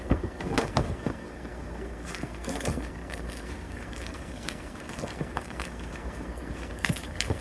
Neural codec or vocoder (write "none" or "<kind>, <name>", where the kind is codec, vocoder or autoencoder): codec, SNAC